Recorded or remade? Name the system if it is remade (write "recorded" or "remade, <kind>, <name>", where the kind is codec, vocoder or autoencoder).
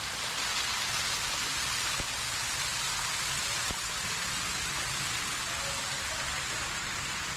recorded